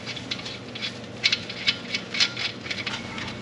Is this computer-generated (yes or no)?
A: no